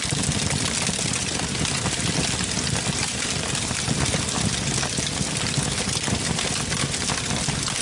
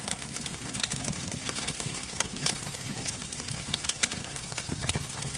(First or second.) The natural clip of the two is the first